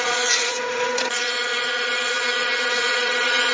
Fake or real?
fake